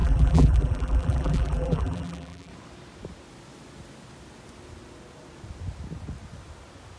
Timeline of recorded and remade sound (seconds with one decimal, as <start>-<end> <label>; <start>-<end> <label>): 0.0-2.5 remade; 2.5-7.0 recorded